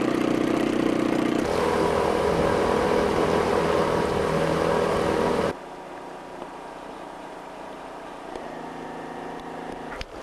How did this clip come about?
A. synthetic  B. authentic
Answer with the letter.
A